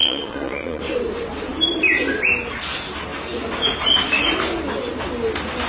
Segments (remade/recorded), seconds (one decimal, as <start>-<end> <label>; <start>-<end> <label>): 0.0-0.8 remade; 0.8-5.7 recorded